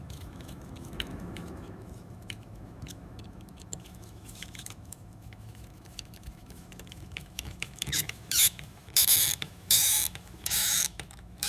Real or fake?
fake